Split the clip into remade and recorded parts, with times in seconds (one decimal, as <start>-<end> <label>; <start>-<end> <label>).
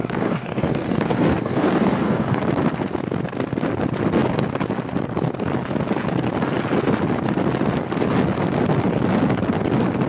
0.0-2.4 remade; 2.4-10.1 recorded